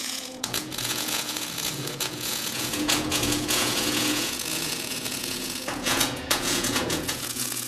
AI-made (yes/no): yes